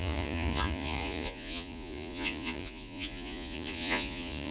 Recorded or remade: remade